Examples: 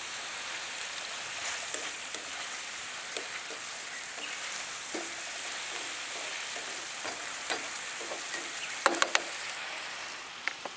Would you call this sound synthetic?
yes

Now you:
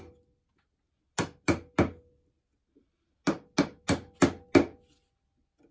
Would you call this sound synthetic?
no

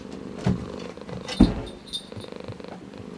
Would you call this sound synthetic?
no